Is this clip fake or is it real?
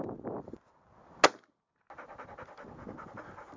real